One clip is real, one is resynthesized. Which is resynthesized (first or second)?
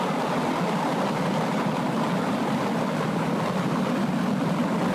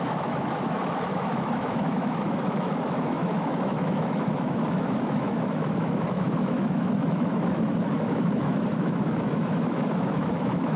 second